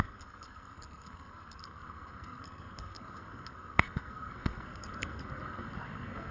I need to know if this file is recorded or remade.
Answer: remade